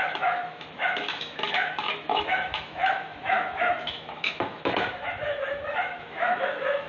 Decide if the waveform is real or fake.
fake